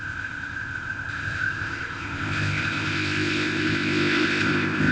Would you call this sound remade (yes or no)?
yes